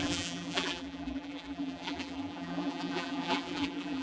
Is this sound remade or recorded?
remade